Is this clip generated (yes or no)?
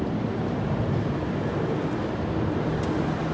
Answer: no